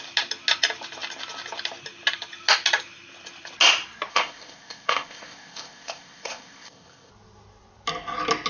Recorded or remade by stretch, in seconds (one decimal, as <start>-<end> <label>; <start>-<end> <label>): 0.0-4.1 recorded; 4.1-7.1 remade; 7.1-8.5 recorded